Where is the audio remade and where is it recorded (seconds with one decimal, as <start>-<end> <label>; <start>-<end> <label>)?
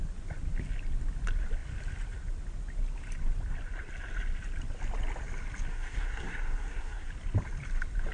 0.0-5.7 recorded; 5.7-7.1 remade; 7.1-8.1 recorded